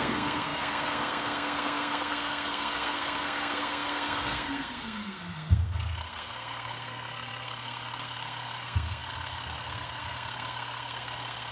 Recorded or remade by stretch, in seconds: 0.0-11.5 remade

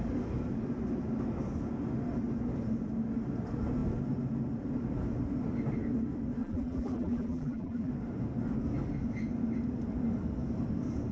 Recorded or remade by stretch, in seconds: 0.0-6.4 recorded; 6.4-7.9 remade; 7.9-11.1 recorded

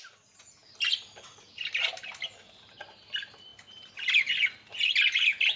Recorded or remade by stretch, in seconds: 0.0-5.6 recorded

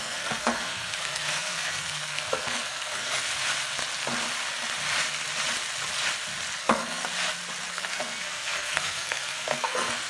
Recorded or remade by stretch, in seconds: 0.0-3.3 remade; 3.3-6.6 recorded; 6.6-7.0 remade; 7.0-7.7 recorded; 7.7-10.1 remade

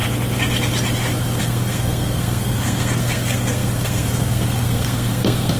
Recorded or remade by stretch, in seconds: 0.0-1.4 recorded; 1.4-5.6 remade

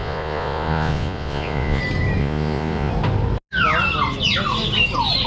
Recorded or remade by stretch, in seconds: 0.0-1.8 remade; 1.8-2.2 recorded; 2.2-2.9 remade; 2.9-5.3 recorded

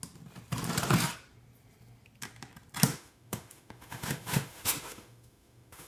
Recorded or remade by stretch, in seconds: 0.0-2.9 recorded; 2.9-5.9 remade

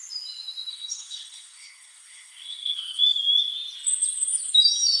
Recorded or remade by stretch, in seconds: 0.0-0.7 recorded; 0.7-3.0 remade; 3.0-5.0 recorded